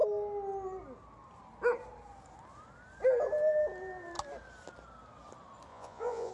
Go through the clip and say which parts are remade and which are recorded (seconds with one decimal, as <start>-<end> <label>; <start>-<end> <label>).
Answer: 0.0-5.7 recorded; 5.7-6.3 remade